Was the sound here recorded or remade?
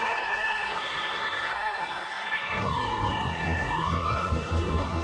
remade